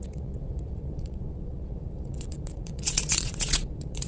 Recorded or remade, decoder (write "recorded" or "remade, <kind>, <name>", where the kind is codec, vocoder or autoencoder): remade, vocoder, WaveNeXt